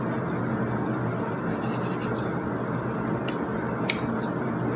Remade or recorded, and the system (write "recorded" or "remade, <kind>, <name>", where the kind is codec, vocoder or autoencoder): recorded